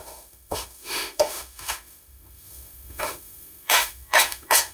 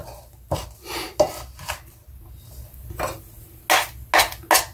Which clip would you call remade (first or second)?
first